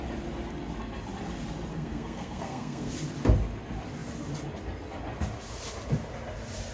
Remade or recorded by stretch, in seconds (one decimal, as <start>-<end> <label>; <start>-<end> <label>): 0.0-1.7 recorded; 1.7-2.9 remade; 2.9-6.7 recorded